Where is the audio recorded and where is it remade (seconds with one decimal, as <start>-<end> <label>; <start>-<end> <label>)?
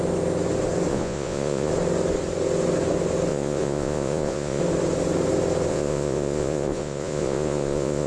0.0-0.9 recorded; 0.9-1.7 remade; 1.7-3.3 recorded; 3.3-4.6 remade; 4.6-5.7 recorded; 5.7-8.1 remade